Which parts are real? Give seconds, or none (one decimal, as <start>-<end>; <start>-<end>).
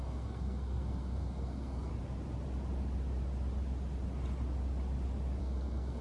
1.9-5.4